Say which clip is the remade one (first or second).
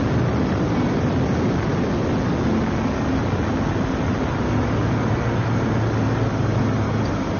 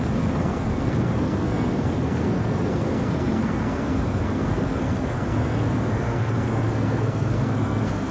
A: second